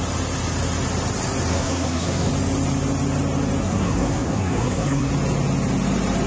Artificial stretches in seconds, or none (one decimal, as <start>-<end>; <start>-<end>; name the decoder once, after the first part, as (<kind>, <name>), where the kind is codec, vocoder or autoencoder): 1.5-2.3 (codec, SNAC); 3.6-5.1

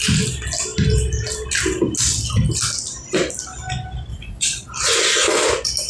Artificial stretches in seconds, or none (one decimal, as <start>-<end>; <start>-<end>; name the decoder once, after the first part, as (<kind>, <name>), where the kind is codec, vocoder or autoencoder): 4.1-4.7 (vocoder, Vocos)

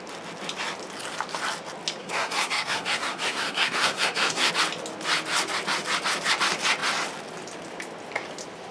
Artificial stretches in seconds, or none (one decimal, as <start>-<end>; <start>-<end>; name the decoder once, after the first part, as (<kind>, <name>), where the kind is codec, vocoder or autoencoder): 2.0-4.5 (codec, SNAC)